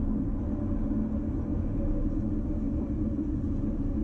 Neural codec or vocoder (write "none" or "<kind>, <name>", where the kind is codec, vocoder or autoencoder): none